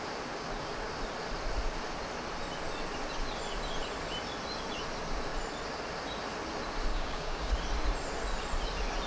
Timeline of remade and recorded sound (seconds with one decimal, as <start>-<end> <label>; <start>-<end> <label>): 0.0-6.9 recorded; 6.9-7.5 remade; 7.5-9.1 recorded